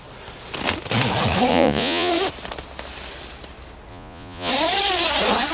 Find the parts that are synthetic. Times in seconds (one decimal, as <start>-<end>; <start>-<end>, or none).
1.5-2.1; 3.9-4.5